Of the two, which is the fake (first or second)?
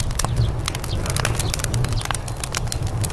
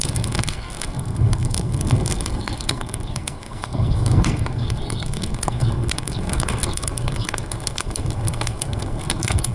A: second